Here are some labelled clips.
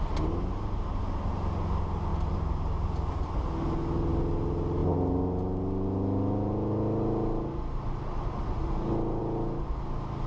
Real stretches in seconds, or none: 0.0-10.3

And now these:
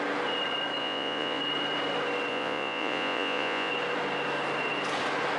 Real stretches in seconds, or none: 0.0-0.8; 1.4-2.3; 3.7-5.4

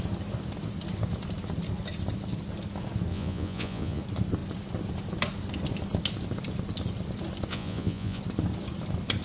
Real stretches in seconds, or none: 0.0-3.1; 4.0-7.5; 8.2-9.2

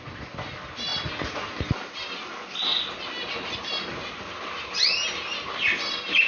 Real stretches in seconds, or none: 0.0-6.3